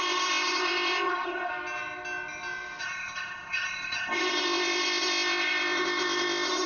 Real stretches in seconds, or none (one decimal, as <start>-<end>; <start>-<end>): 1.5-2.8